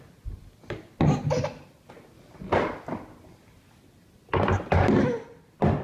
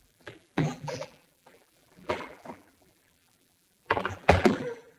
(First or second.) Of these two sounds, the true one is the first